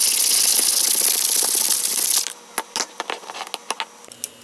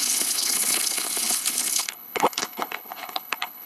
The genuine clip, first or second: first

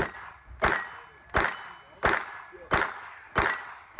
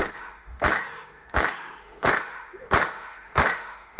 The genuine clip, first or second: first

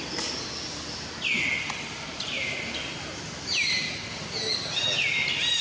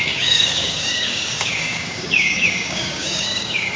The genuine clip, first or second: first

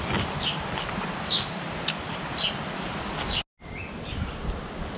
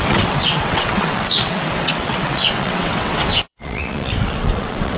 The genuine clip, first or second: first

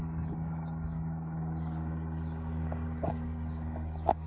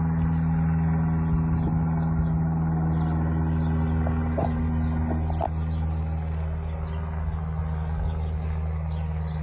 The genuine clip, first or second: second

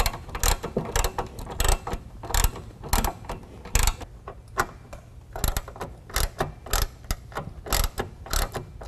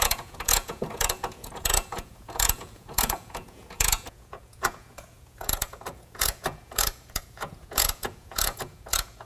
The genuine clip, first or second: first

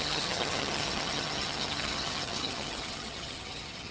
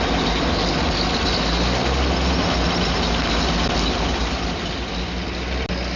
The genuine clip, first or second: second